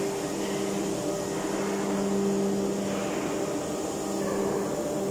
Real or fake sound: real